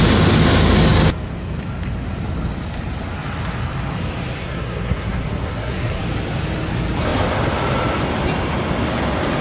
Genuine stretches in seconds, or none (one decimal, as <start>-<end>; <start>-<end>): 0.0-4.4; 6.0-9.4